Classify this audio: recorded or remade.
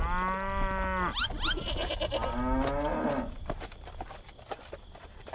recorded